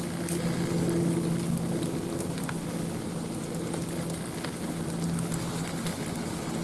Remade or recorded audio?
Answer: recorded